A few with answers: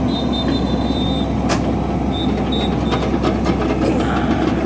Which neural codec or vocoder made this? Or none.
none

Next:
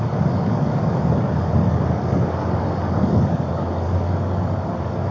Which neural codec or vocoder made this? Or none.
codec, DAC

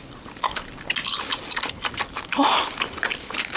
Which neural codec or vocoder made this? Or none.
none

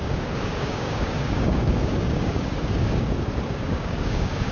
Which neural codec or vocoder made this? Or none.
codec, DAC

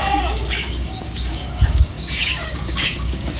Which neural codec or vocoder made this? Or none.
codec, DAC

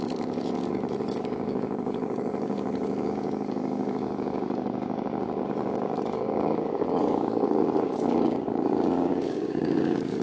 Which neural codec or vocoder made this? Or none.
codec, DAC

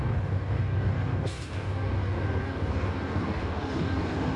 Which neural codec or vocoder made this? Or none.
codec, DAC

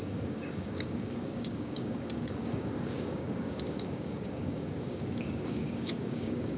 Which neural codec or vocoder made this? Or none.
codec, DAC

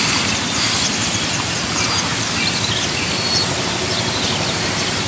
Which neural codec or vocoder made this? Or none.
none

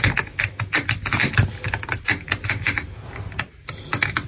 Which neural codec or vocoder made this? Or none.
none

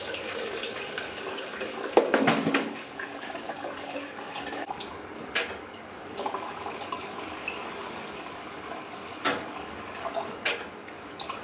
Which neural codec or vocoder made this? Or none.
codec, DAC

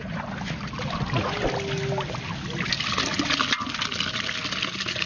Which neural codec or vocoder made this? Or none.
none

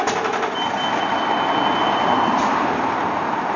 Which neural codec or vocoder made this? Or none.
none